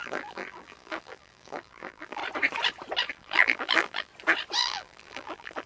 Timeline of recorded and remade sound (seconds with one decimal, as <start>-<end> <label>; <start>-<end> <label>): 0.0-2.2 remade; 2.2-3.1 recorded; 3.1-4.1 remade; 4.1-4.6 recorded; 4.6-5.7 remade